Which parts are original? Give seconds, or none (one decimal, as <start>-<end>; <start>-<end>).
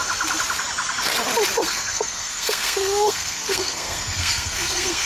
0.0-1.6